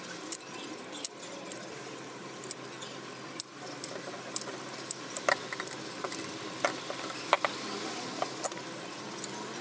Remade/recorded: recorded